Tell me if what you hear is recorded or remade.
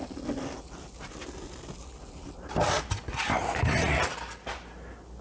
recorded